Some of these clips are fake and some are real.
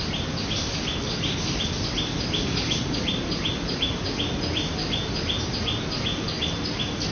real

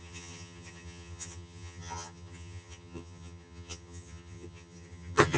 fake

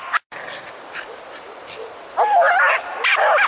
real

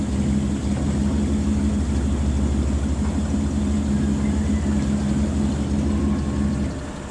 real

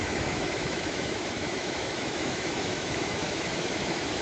fake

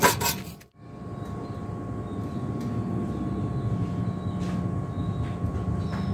real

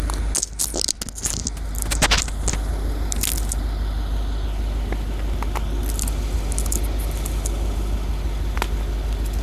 real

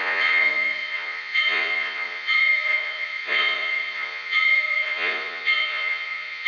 fake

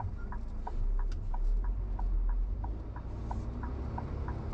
real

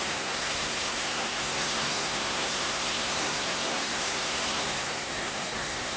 fake